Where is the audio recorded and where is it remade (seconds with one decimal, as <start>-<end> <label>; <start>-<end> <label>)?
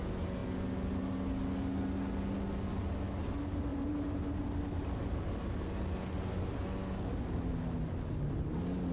0.0-3.7 recorded; 3.7-4.4 remade; 4.4-8.9 recorded